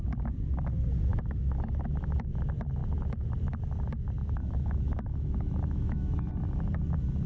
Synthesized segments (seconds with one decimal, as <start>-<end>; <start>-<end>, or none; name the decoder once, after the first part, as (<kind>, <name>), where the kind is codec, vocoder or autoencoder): 1.1-2.4 (autoencoder, DAC-VAE); 4.2-6.3